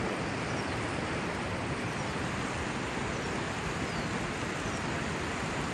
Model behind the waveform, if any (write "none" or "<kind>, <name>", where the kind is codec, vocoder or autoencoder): none